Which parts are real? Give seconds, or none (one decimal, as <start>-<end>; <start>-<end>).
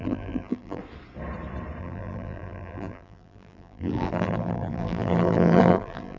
0.8-1.8